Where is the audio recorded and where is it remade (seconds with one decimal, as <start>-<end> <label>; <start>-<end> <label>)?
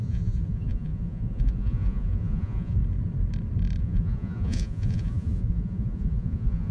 0.0-2.8 remade; 2.8-3.8 recorded; 3.8-6.7 remade